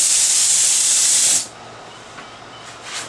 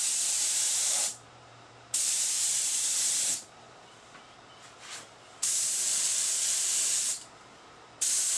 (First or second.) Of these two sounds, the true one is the first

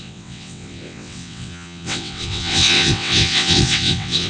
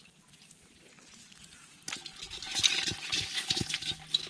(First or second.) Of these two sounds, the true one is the second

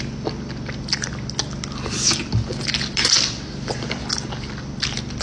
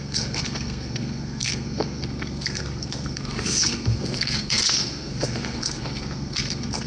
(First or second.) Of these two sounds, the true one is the first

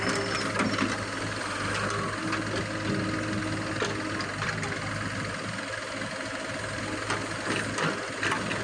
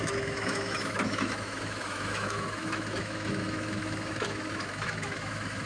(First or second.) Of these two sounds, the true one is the first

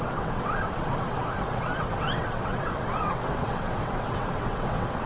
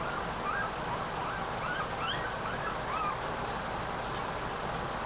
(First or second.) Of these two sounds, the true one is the second